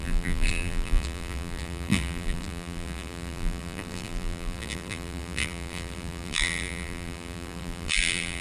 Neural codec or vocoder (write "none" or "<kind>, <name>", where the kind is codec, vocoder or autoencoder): vocoder, BigVGAN v2